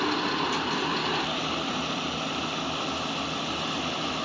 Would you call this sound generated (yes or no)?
no